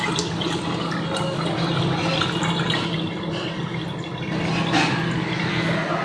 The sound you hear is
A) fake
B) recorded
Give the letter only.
B